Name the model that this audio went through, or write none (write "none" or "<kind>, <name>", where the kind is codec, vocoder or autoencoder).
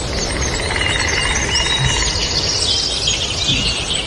none